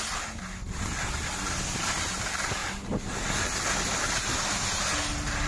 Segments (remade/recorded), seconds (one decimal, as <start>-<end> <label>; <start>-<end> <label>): 0.0-5.5 recorded